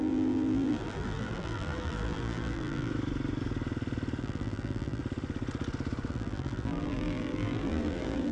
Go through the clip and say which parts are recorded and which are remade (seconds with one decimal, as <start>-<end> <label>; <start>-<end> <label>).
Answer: 0.0-2.9 remade; 2.9-4.2 recorded; 4.2-5.0 remade; 5.0-6.1 recorded; 6.1-8.3 remade